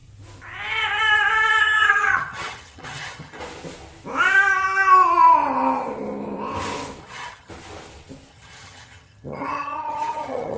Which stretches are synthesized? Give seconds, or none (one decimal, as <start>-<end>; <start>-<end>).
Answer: 1.6-3.4; 7.0-7.5; 8.3-10.6